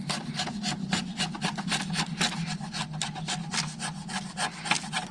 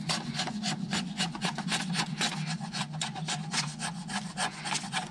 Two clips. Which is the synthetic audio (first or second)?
second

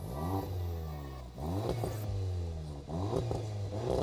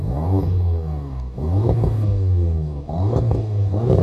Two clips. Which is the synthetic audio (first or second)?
second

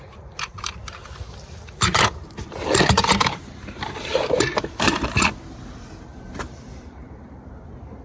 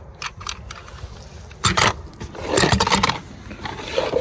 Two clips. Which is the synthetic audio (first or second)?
first